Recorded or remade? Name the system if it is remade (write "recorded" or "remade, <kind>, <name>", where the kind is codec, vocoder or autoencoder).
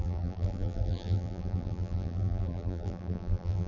remade, vocoder, BigVGAN v2